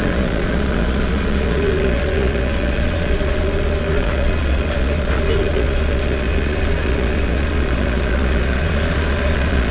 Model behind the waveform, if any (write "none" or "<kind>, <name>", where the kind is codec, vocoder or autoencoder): vocoder, Vocos